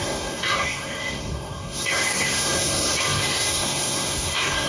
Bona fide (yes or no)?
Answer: no